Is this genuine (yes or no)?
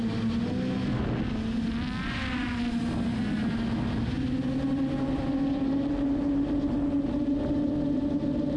yes